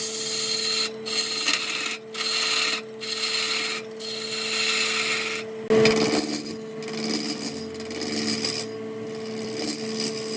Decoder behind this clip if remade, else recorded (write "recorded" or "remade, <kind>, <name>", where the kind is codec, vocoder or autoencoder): recorded